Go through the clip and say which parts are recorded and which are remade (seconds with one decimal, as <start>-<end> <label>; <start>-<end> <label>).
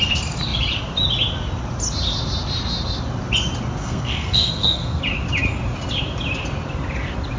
0.0-3.8 recorded; 3.8-5.0 remade; 5.0-7.4 recorded